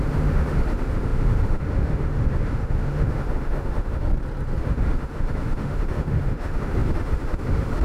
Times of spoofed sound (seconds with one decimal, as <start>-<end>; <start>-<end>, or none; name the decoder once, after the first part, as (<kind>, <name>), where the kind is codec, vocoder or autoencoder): 0.0-4.1 (autoencoder, DAC-VAE); 4.6-7.8